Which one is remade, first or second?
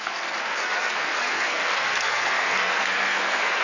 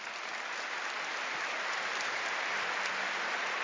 first